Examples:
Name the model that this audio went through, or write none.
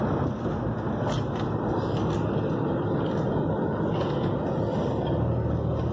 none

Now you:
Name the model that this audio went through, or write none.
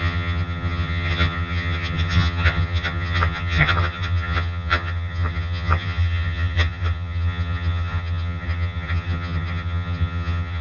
vocoder, HiFi-GAN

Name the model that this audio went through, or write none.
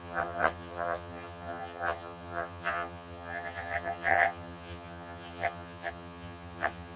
vocoder, HiFi-GAN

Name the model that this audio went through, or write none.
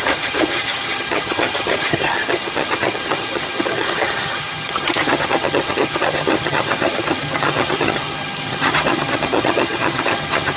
vocoder, HiFi-GAN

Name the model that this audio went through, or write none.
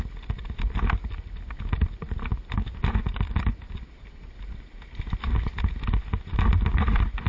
none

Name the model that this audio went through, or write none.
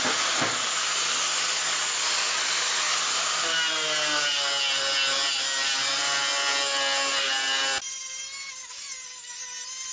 none